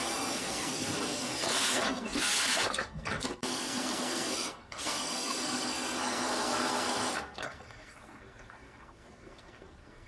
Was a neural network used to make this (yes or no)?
yes